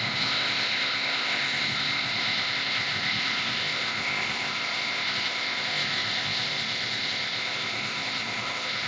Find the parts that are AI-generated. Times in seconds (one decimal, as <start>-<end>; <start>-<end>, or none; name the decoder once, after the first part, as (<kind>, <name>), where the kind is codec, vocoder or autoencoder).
0.0-8.9 (codec, ZipCodec)